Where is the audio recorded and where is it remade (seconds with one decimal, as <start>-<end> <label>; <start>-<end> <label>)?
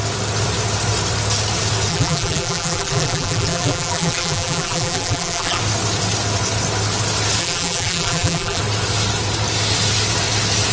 0.0-1.9 recorded; 1.9-5.6 remade; 5.6-7.4 recorded; 7.4-8.6 remade; 8.6-10.7 recorded